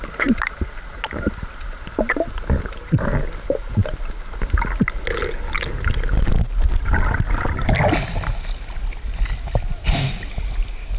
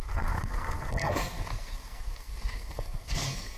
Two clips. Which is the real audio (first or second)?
first